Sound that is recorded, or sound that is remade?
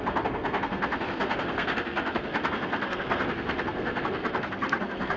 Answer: remade